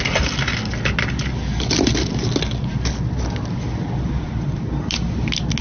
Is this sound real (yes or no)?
yes